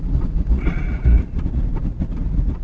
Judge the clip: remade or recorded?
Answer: remade